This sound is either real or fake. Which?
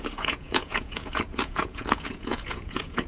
fake